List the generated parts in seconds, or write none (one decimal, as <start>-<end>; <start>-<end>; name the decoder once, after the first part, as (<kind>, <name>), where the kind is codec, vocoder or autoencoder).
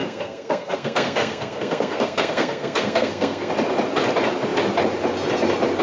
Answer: 0.0-3.5 (codec, SNAC)